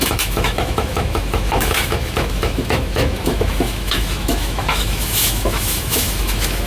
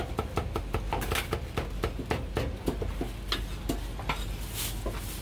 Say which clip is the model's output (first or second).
first